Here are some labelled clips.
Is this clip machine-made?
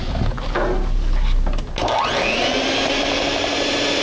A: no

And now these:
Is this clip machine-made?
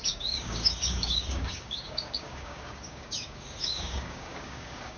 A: yes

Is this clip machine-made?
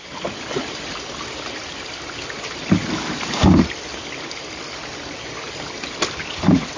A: no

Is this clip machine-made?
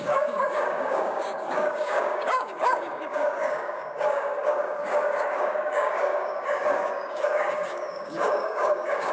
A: yes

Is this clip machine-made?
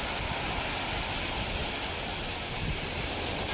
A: no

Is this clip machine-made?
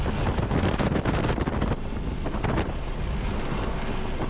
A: no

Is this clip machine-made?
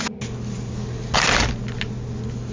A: no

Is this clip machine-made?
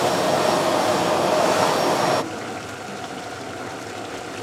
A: no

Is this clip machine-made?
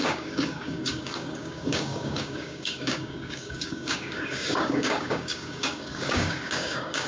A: yes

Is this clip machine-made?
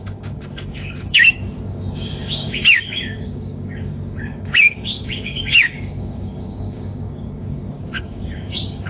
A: yes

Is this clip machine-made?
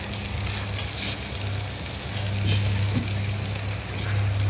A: no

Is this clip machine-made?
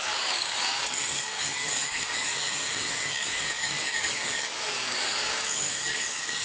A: yes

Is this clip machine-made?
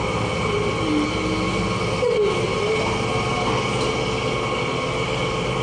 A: no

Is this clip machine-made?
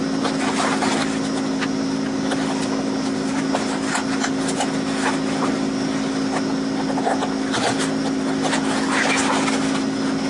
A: no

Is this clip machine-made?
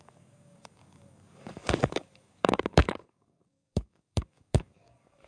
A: yes